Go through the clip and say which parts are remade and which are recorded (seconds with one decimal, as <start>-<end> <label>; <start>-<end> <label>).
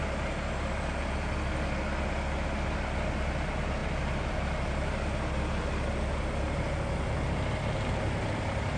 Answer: 0.0-8.8 recorded